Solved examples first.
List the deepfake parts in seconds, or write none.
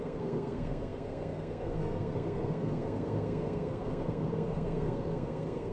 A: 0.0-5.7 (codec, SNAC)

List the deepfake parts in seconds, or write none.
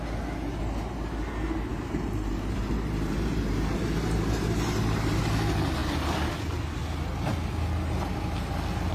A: 1.7-5.2 (vocoder, BigVGAN v2)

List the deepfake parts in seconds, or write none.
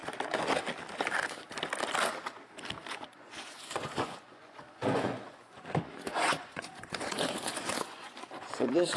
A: 2.9-9.0 (vocoder, Vocos)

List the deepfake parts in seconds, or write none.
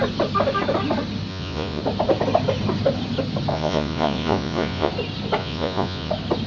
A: 1.3-1.8 (vocoder, Vocos); 3.5-4.9; 5.4-6.1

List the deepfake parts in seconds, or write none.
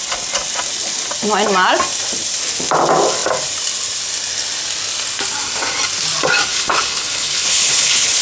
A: 6.5-8.2 (codec, HILCodec)